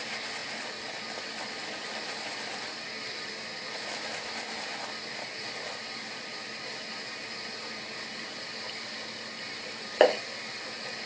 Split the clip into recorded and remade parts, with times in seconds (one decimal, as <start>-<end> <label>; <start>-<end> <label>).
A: 0.0-11.1 recorded